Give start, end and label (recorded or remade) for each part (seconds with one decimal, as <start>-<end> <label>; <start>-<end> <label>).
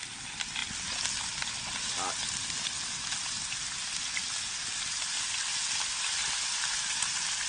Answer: 0.0-7.5 recorded